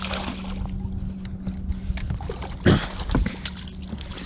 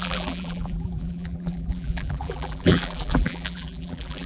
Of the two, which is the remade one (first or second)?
second